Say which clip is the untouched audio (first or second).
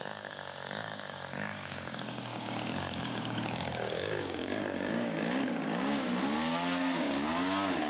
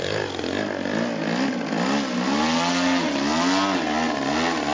second